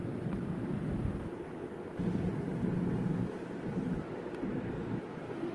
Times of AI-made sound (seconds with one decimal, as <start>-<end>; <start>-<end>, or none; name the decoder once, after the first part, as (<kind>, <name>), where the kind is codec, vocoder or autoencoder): none